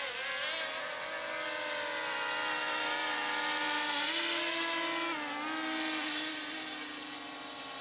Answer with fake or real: real